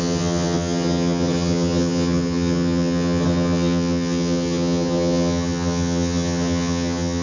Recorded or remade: remade